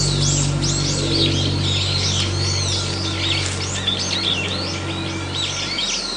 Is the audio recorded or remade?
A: recorded